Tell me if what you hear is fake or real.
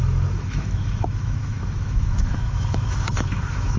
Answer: fake